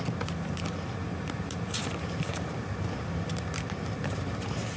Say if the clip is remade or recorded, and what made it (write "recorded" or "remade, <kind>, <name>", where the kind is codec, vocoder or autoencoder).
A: remade, vocoder, BigVGAN v2